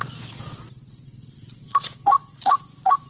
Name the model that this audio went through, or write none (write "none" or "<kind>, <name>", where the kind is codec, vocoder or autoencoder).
vocoder, Vocos